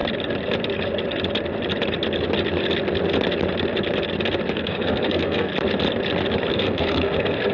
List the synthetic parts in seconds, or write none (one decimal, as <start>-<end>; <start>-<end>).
4.5-5.5; 6.5-7.5